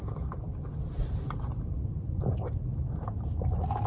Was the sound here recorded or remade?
recorded